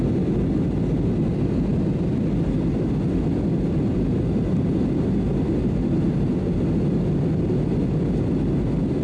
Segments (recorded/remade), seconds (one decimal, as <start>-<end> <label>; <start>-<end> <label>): 0.0-9.0 recorded